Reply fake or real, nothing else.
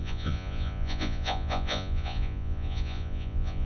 fake